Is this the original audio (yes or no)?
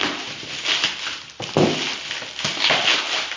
yes